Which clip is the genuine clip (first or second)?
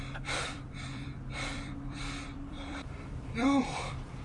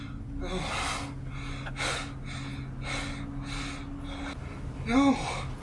second